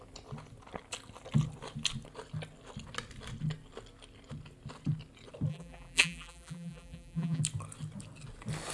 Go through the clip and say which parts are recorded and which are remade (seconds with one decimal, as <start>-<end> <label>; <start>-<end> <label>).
0.0-5.5 recorded; 5.5-7.4 remade; 7.4-8.7 recorded